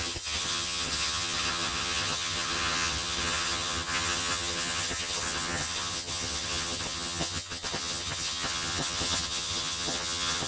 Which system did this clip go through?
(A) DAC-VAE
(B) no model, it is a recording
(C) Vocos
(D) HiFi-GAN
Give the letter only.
D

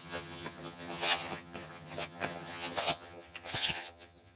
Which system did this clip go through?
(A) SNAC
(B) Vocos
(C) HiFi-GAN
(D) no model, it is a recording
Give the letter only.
C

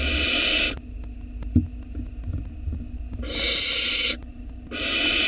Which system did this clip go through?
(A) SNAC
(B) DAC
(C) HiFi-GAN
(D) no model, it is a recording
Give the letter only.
D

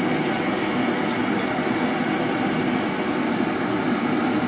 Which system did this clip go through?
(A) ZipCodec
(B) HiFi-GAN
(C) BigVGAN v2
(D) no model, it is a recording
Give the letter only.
D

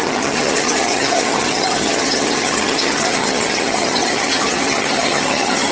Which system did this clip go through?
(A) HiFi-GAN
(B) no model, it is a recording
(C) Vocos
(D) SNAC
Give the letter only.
A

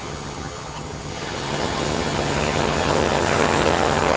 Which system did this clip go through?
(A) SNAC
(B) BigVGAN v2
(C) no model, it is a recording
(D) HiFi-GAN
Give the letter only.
D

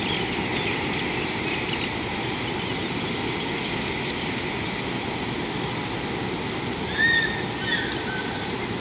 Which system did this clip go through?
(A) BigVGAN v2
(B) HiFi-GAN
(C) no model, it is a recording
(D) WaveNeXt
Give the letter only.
C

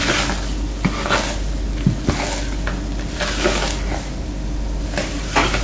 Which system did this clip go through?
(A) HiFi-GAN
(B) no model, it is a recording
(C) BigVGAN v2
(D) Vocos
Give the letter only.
B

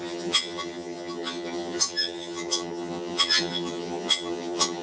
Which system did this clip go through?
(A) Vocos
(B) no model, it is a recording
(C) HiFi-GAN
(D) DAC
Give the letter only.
C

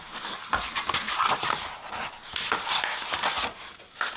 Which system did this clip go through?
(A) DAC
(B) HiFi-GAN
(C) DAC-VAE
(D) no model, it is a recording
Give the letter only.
D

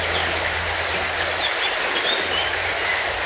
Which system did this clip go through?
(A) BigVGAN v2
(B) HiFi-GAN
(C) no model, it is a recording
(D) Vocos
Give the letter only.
C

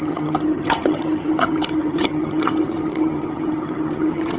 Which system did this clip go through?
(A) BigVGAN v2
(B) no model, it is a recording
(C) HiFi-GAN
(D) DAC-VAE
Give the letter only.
C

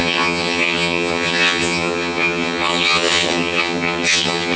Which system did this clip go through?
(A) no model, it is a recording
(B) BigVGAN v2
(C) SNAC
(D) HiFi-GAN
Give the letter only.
D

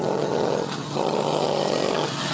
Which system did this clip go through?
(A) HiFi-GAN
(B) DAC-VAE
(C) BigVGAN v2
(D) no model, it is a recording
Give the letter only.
A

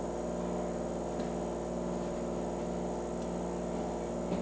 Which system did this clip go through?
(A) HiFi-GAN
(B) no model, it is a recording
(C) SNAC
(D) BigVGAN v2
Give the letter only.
B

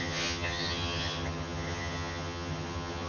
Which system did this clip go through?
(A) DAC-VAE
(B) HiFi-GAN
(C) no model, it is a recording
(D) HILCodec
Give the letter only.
B